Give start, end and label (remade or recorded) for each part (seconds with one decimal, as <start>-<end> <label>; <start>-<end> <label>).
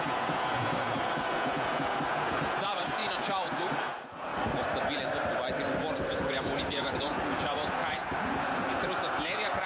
0.0-4.3 remade; 4.3-6.1 recorded; 6.1-9.7 remade